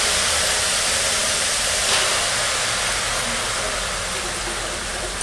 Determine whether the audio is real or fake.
fake